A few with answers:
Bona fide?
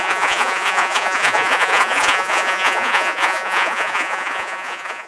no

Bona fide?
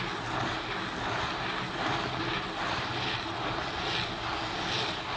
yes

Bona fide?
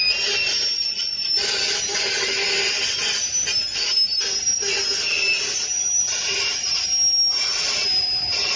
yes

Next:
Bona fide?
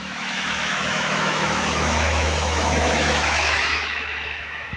no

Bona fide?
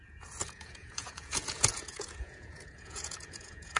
no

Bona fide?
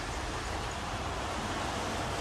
yes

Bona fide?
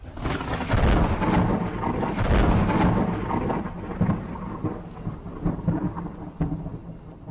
yes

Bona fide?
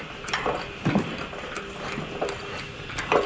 yes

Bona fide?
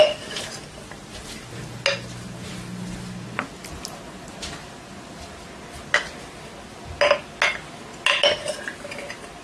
yes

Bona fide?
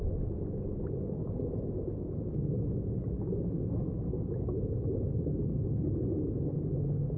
yes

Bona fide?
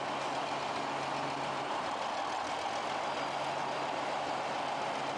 yes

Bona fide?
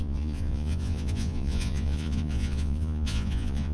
no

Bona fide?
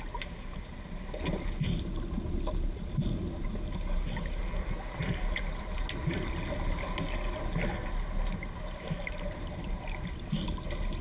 yes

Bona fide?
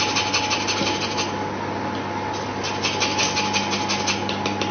yes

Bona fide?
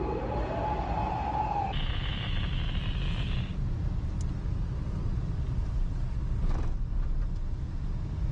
yes